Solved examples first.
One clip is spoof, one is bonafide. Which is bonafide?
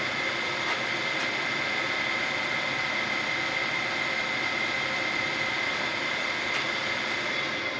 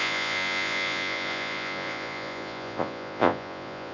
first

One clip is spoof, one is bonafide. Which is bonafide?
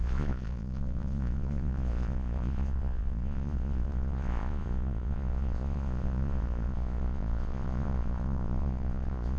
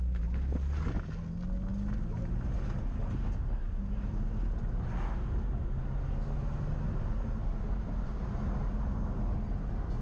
second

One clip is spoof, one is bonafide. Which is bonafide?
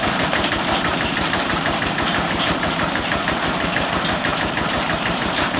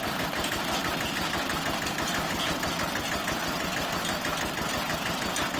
second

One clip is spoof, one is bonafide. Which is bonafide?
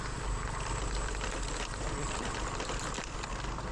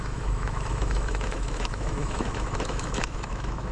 first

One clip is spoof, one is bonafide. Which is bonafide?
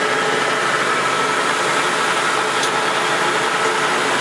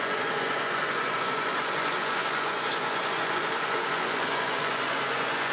first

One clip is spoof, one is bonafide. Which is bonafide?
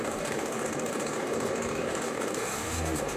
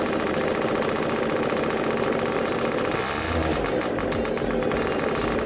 second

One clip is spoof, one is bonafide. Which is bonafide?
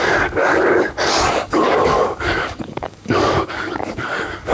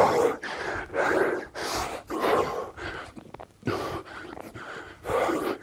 second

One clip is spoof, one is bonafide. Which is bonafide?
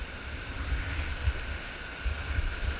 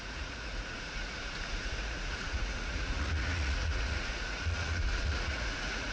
first